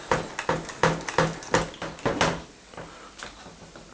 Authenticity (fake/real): real